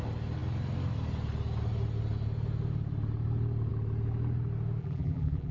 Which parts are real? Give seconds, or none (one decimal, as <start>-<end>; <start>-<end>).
0.0-4.8